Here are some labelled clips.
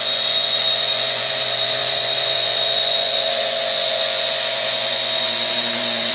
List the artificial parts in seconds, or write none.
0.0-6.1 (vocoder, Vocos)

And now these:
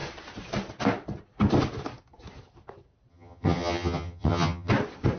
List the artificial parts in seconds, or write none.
3.1-4.7 (vocoder, HiFi-GAN)

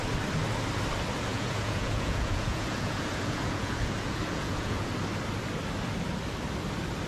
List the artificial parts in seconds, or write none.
1.3-4.9 (vocoder, Vocos)

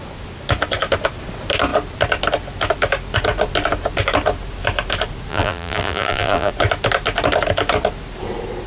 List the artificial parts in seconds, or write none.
5.3-6.5 (vocoder, BigVGAN v2)

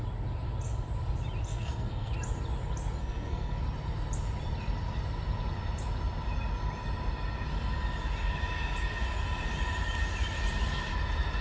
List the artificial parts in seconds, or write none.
1.5-2.1 (codec, SNAC); 3.0-3.6

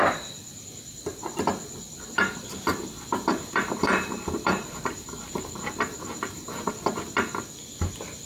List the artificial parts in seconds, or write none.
2.7-6.7 (vocoder, BigVGAN v2)